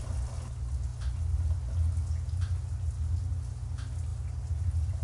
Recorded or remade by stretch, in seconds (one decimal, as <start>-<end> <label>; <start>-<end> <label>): 0.0-5.0 recorded